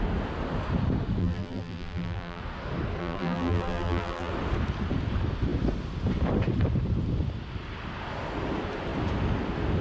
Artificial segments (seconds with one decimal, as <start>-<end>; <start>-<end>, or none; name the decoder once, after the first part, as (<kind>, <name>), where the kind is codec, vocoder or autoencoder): 1.2-2.4 (vocoder, BigVGAN v2); 3.0-4.3